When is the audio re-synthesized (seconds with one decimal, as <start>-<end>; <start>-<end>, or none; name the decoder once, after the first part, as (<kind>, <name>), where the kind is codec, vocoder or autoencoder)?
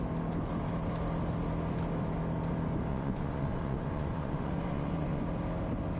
2.9-5.2 (vocoder, Vocos)